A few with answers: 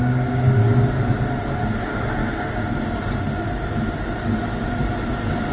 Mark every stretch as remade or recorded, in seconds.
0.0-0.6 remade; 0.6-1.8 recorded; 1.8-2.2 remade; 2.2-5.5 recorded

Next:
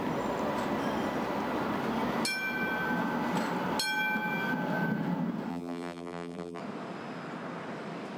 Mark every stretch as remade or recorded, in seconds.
0.0-5.5 recorded; 5.5-6.6 remade; 6.6-8.2 recorded

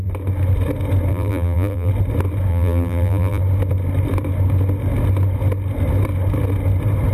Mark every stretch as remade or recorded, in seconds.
0.0-1.1 recorded; 1.1-1.9 remade; 1.9-2.5 recorded; 2.5-3.4 remade; 3.4-7.1 recorded